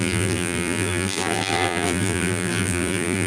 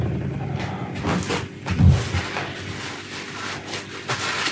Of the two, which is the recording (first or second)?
second